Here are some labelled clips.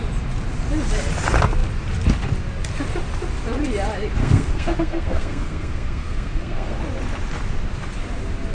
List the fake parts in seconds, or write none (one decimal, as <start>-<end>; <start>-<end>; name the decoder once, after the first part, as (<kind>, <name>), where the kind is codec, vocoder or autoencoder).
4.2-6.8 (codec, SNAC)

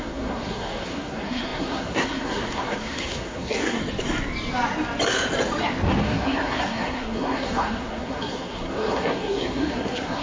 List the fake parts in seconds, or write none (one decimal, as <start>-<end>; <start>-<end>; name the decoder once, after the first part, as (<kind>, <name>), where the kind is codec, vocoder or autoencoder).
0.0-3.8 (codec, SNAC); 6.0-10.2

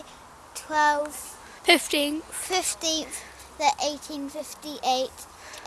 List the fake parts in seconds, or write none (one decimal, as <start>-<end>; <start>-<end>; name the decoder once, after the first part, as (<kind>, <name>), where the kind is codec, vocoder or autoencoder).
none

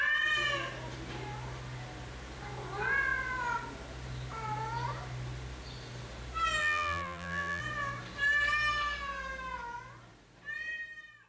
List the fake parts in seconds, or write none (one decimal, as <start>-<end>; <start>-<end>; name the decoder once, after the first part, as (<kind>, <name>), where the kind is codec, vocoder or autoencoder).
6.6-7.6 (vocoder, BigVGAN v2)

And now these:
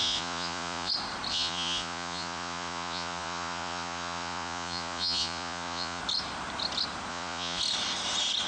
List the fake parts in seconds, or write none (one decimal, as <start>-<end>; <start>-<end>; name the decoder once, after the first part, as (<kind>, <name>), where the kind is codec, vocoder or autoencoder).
0.0-0.9 (vocoder, Vocos); 1.3-6.0; 7.1-7.6

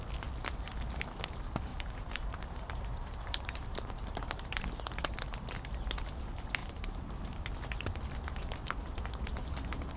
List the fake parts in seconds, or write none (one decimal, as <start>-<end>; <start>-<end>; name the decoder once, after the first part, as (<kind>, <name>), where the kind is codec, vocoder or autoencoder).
1.7-4.6 (vocoder, BigVGAN v2); 6.6-7.2

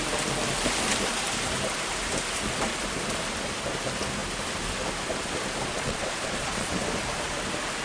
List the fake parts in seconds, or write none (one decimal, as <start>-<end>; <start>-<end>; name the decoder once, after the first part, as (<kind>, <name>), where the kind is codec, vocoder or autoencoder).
5.7-6.7 (vocoder, Vocos)

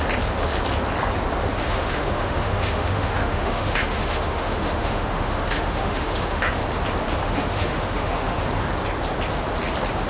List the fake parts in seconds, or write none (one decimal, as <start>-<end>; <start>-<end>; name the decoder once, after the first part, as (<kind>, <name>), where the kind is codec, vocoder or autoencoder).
1.6-6.6 (autoencoder, DAC-VAE); 7.2-8.4